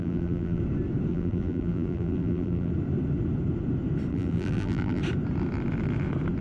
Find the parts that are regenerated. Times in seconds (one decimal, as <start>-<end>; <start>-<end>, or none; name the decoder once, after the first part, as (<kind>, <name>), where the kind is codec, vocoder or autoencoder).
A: 0.0-0.6 (vocoder, BigVGAN v2); 1.1-2.7; 4.1-5.0